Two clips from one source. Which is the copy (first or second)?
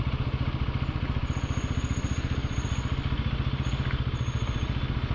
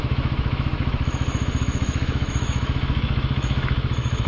second